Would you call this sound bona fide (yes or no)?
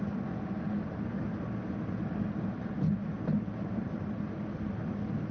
yes